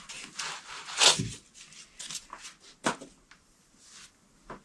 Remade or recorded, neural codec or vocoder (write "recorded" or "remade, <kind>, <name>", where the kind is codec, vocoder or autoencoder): recorded